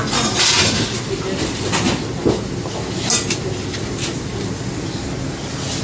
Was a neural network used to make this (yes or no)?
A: no